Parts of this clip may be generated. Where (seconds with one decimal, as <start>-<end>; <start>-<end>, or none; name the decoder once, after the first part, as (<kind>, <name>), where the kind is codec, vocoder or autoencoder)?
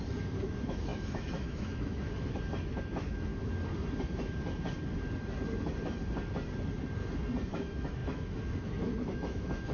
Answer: 0.0-3.3 (autoencoder, DAC-VAE); 7.5-9.7